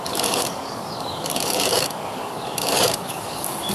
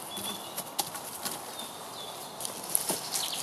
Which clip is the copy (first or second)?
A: first